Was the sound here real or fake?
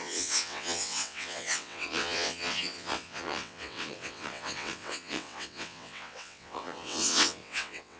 fake